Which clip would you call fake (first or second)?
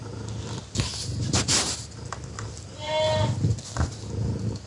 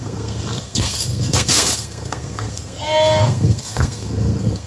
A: second